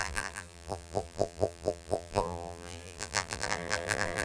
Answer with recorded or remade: remade